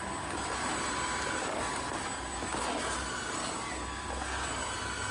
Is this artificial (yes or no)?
no